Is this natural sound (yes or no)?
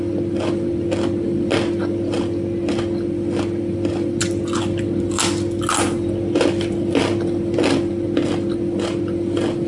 yes